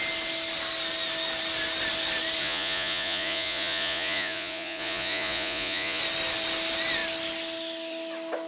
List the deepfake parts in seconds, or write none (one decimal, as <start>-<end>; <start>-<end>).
2.4-6.0